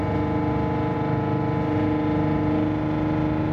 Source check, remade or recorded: recorded